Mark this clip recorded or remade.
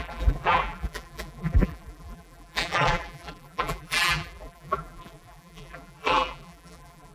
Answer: remade